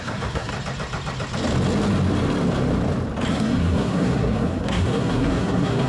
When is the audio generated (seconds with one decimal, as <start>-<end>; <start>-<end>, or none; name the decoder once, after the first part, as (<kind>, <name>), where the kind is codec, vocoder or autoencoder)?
0.0-0.5 (codec, SNAC); 3.3-5.9